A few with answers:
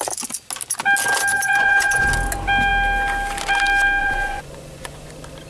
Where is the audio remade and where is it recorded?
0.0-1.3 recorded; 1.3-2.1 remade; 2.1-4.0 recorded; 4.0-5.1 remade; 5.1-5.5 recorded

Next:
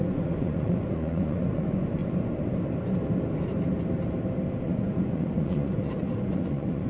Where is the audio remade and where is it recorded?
0.0-2.0 remade; 2.0-4.6 recorded; 4.6-6.9 remade

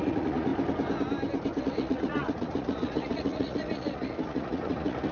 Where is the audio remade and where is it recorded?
0.0-0.5 remade; 0.5-1.6 recorded; 1.6-5.1 remade

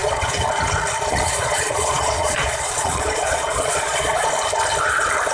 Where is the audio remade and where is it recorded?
0.0-0.5 remade; 0.5-1.1 recorded; 1.1-4.3 remade; 4.3-5.3 recorded

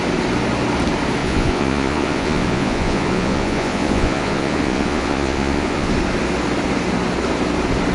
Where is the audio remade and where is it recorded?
0.0-1.2 recorded; 1.2-5.9 remade; 5.9-7.9 recorded

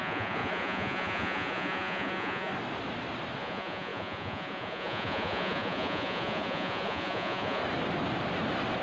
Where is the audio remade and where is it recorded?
0.0-2.5 remade; 2.5-3.4 recorded; 3.4-7.6 remade; 7.6-8.8 recorded

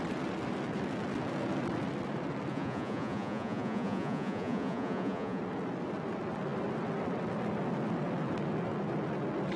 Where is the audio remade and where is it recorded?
0.0-2.5 recorded; 2.5-5.4 remade; 5.4-9.6 recorded